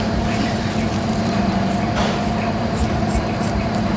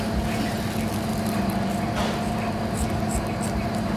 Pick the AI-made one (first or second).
first